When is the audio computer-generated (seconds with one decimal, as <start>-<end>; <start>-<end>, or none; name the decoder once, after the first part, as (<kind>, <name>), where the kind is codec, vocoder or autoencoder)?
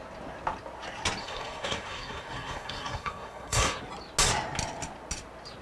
1.2-3.8 (codec, SNAC)